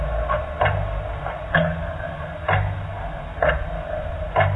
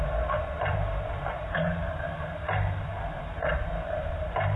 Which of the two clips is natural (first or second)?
first